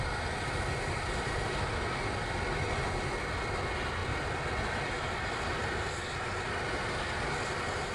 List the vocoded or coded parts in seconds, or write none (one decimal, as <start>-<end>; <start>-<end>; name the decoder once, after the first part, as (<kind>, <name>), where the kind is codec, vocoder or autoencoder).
none